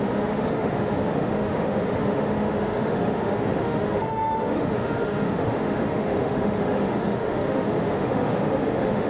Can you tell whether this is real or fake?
fake